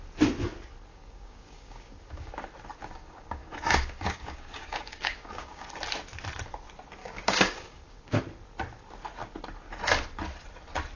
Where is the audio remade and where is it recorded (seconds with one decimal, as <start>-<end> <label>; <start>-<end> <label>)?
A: 0.0-0.9 recorded; 0.9-2.3 remade; 2.3-2.8 recorded; 2.8-5.7 remade; 5.7-7.0 recorded; 7.0-8.2 remade; 8.2-11.0 recorded